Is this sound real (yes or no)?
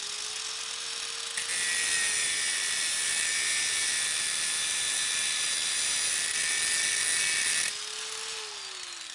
yes